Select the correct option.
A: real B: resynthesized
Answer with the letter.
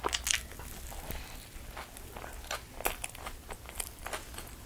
A